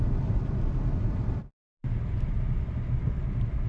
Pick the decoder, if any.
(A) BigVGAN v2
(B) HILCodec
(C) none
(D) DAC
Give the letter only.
C